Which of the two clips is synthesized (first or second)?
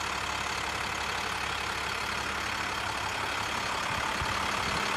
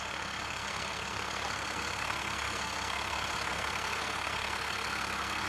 second